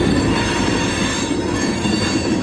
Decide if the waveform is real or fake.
real